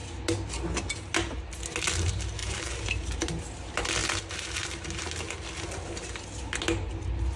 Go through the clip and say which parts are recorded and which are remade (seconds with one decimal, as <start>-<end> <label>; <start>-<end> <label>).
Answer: 0.0-2.4 recorded; 2.4-3.4 remade; 3.4-7.4 recorded